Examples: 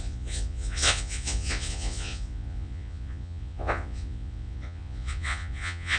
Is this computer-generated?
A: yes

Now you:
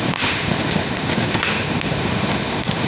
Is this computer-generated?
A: yes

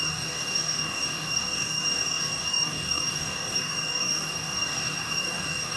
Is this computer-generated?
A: yes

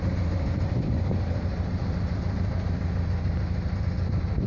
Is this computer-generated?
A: no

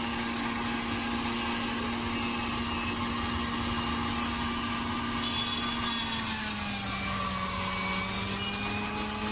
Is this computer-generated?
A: no